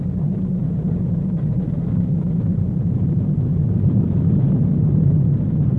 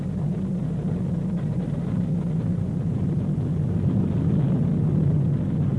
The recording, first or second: second